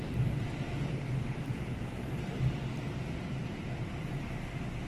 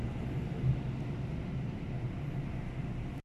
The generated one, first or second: first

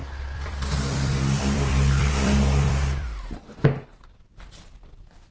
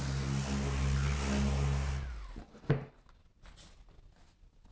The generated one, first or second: first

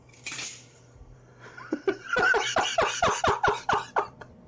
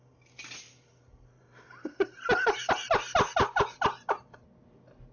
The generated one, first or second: first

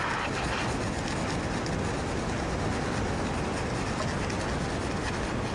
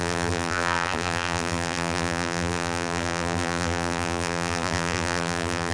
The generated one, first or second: second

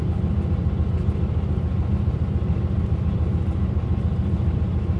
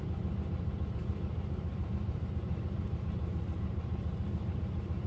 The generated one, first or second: second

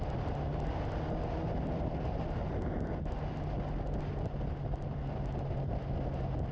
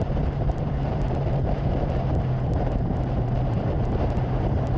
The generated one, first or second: second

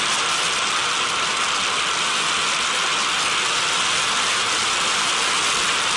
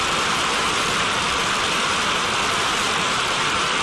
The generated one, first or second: second